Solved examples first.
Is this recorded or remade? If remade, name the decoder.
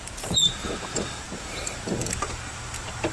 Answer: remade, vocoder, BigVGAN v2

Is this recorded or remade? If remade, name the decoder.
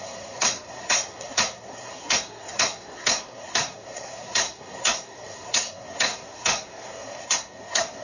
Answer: remade, codec, SNAC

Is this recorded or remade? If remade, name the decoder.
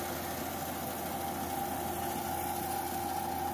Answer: recorded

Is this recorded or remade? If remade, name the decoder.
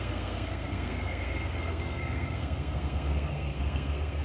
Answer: remade, codec, SNAC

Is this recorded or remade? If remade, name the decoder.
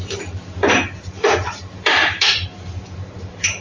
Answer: remade, vocoder, BigVGAN v2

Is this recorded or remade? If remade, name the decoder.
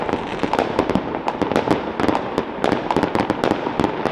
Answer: recorded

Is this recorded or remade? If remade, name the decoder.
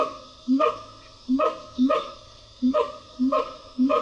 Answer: remade, codec, SNAC